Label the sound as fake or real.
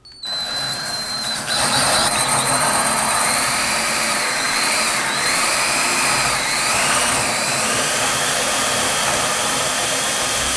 fake